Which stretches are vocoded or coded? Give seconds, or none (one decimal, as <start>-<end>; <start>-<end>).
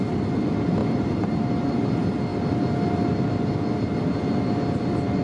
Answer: 0.8-1.4